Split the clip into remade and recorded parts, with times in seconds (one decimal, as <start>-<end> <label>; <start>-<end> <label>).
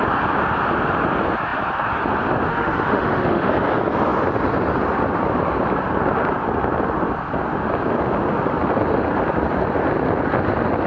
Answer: 0.0-2.5 recorded; 2.5-3.5 remade; 3.5-10.9 recorded